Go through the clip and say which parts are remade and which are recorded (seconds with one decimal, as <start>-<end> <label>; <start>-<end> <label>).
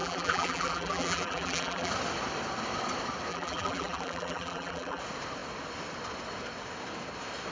0.0-1.9 remade; 1.9-3.3 recorded; 3.3-5.0 remade; 5.0-7.5 recorded